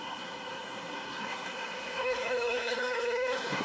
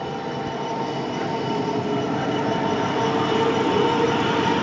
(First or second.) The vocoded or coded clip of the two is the first